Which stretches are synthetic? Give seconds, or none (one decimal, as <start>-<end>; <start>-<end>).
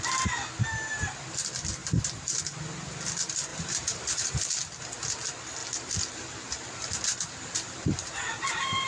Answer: 1.8-2.4; 3.5-4.5; 5.6-8.1